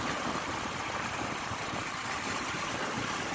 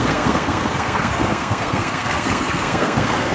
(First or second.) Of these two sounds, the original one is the first